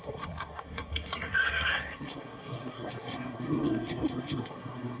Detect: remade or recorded remade